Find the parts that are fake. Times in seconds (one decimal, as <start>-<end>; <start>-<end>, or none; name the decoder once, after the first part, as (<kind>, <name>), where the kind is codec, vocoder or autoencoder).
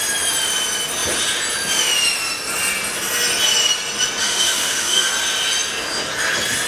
4.2-5.1 (autoencoder, DAC-VAE)